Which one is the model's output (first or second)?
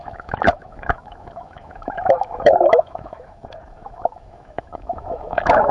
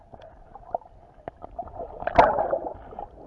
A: first